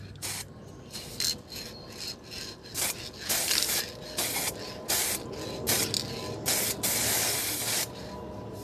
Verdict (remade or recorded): recorded